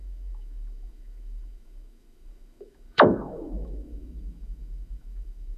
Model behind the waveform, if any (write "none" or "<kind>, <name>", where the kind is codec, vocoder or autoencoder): autoencoder, DAC-VAE